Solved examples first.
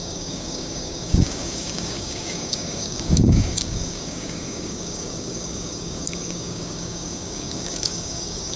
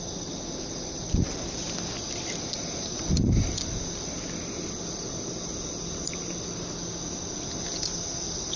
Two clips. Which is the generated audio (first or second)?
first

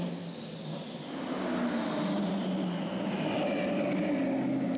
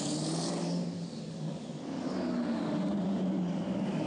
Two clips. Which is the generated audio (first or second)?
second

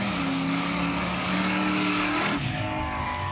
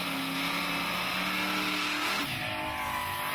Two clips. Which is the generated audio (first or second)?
first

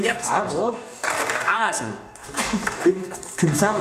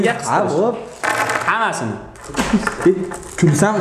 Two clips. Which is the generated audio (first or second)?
first